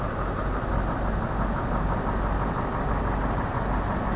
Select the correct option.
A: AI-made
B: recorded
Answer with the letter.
B